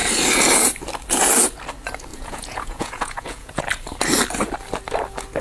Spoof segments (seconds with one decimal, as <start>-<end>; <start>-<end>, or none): 2.1-3.6